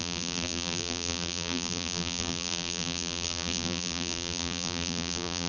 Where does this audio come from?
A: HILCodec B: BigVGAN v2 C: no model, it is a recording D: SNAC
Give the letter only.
B